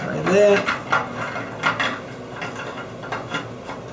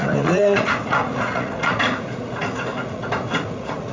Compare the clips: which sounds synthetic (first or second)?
second